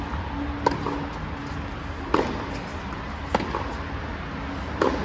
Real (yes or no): yes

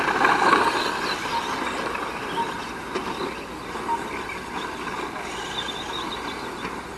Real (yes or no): yes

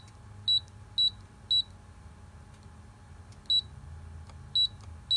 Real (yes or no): yes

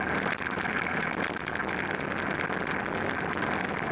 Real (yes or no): yes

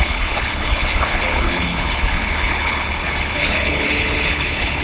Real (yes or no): no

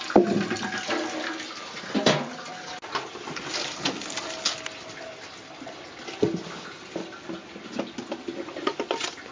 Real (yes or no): yes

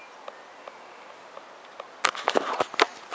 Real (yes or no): yes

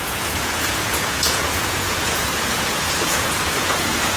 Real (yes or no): no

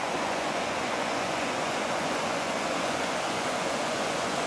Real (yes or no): no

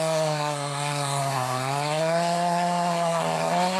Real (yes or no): no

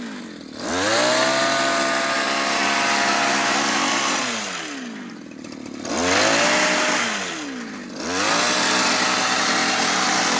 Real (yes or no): yes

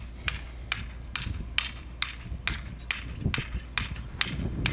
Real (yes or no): yes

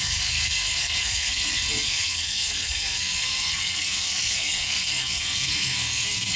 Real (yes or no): no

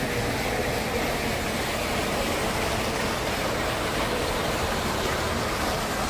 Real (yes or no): yes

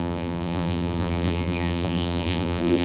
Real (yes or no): no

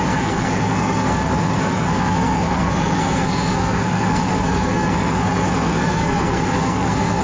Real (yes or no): no